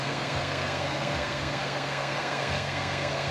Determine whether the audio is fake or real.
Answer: fake